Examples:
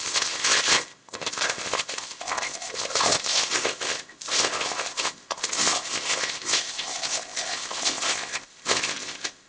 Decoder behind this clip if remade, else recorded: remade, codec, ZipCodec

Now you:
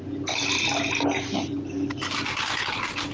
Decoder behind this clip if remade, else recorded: recorded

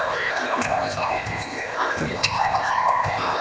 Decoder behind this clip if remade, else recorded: remade, codec, ZipCodec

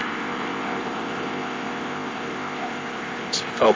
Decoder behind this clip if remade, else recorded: remade, codec, ZipCodec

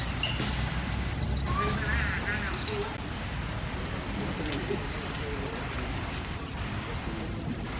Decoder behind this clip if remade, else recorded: recorded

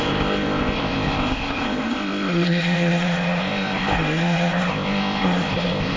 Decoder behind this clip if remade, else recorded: remade, codec, ZipCodec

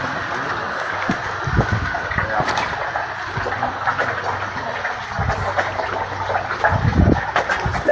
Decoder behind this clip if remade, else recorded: recorded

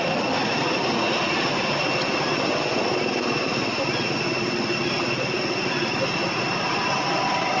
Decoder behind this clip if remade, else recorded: recorded